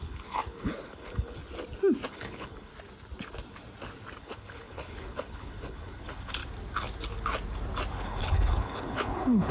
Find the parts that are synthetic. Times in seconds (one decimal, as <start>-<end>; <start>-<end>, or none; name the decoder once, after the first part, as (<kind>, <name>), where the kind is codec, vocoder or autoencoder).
0.0-1.4 (codec, HILCodec); 2.1-2.7; 4.2-6.4; 7.9-9.5